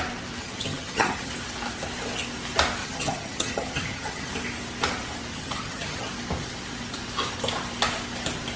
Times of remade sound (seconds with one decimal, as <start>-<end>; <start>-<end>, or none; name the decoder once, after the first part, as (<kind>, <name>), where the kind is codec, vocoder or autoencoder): 0.4-1.3 (vocoder, HiFi-GAN); 2.8-4.3; 5.3-6.1